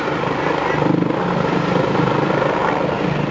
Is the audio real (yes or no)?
yes